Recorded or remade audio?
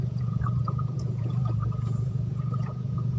remade